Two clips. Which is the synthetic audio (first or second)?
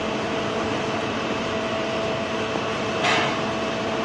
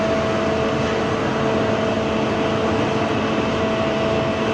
first